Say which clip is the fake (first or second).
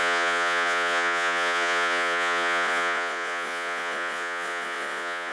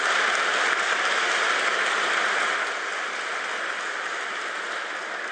first